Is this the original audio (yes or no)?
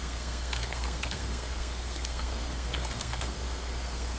no